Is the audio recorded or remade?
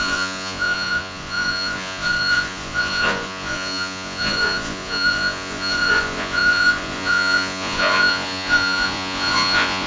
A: remade